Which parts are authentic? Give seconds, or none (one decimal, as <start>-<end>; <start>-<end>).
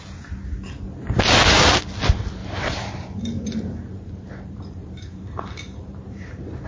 0.0-2.4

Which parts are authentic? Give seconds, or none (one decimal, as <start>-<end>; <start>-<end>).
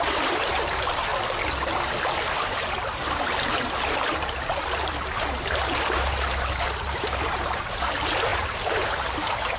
1.1-2.4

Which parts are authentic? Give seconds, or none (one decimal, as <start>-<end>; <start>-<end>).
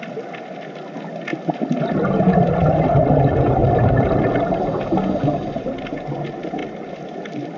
0.0-1.3; 1.9-3.6; 4.4-6.6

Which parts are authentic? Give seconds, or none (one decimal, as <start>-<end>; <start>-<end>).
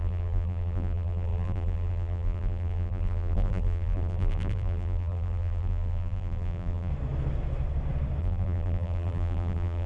6.9-8.2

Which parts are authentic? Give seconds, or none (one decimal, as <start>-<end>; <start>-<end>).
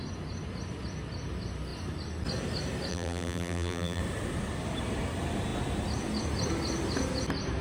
0.0-2.9; 4.0-7.6